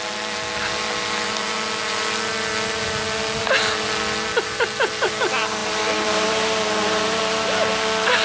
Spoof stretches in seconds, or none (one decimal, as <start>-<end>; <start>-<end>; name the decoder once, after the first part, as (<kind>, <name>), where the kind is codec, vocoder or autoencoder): 5.6-7.2 (vocoder, BigVGAN v2)